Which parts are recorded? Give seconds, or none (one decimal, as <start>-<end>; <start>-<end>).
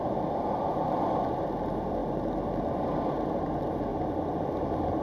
0.0-3.9